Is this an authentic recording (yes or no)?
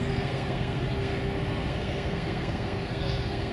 no